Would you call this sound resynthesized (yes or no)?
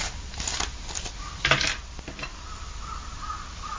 no